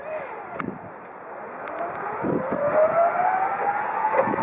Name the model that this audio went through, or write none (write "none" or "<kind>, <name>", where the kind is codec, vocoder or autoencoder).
none